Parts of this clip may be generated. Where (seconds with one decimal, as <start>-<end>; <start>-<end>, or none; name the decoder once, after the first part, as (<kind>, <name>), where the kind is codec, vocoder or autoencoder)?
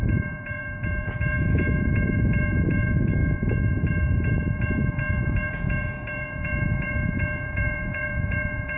0.0-8.8 (vocoder, Vocos)